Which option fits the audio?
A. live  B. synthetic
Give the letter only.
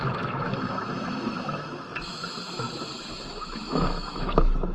B